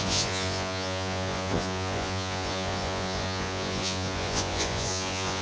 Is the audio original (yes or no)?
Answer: no